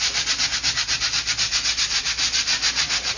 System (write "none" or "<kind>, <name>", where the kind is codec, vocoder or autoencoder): none